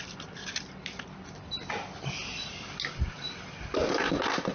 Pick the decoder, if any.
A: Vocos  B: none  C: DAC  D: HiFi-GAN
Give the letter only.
B